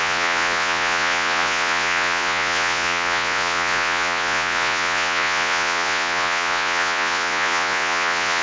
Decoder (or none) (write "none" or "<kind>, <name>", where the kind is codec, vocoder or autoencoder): vocoder, Vocos